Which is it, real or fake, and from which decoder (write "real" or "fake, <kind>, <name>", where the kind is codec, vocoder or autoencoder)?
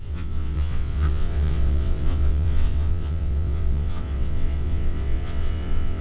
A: fake, vocoder, WaveNeXt